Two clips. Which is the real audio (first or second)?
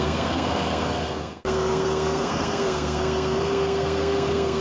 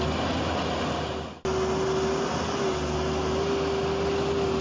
second